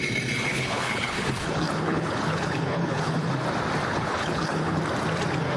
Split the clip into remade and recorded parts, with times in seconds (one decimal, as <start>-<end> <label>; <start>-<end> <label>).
0.0-0.5 recorded; 0.5-3.3 remade; 3.3-3.9 recorded; 3.9-4.8 remade; 4.8-5.6 recorded